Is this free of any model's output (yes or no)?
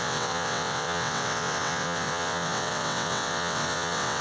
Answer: no